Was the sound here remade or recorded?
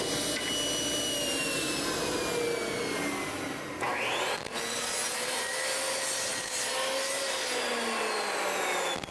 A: recorded